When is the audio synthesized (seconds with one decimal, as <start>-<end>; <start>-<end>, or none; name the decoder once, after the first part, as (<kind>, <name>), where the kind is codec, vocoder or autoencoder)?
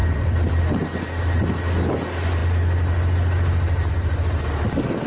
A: 0.0-0.6 (vocoder, BigVGAN v2)